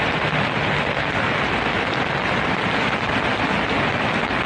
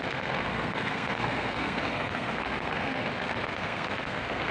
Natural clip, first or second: first